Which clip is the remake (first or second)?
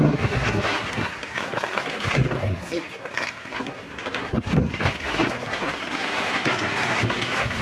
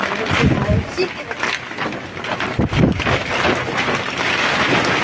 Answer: first